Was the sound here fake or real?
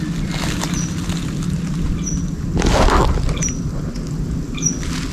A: real